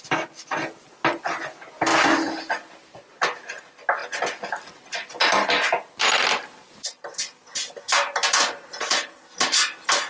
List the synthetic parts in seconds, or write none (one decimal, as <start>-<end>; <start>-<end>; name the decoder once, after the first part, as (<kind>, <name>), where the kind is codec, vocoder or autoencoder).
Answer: none